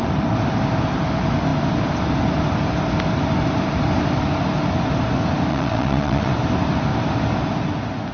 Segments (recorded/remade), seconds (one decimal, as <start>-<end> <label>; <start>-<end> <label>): 0.0-5.5 recorded; 5.5-6.3 remade; 6.3-8.1 recorded